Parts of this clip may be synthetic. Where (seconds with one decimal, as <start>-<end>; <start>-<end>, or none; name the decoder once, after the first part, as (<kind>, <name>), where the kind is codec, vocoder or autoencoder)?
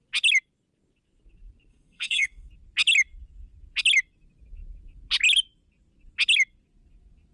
1.7-2.5 (codec, SNAC)